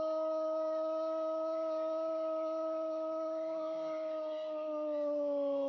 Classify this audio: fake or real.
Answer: real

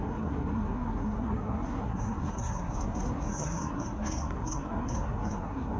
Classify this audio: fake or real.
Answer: fake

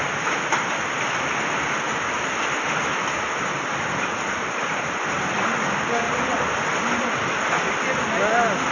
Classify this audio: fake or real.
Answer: real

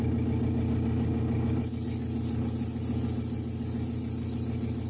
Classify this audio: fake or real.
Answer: real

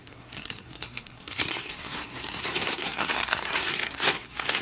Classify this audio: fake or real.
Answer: fake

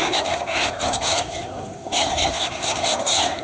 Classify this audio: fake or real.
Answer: fake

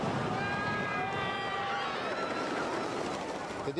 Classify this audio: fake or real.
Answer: real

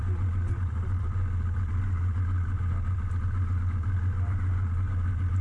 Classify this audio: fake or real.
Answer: real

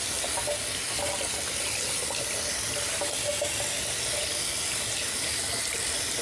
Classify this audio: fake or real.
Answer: real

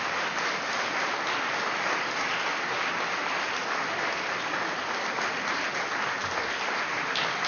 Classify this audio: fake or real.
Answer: real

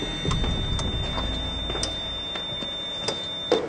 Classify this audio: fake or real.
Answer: real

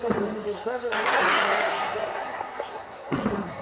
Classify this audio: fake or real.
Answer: fake